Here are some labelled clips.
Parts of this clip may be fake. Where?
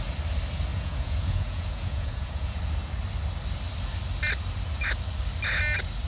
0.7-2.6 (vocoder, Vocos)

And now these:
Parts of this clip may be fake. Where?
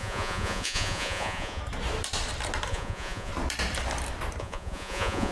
0.0-1.6 (vocoder, Vocos); 2.7-3.3; 4.4-5.3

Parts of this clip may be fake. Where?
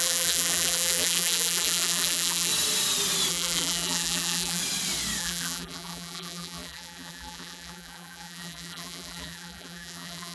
0.0-2.5 (vocoder, BigVGAN v2); 3.3-4.6; 5.2-10.3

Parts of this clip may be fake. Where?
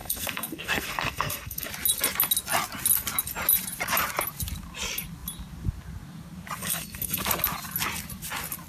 0.0-1.7 (codec, SNAC); 6.6-7.2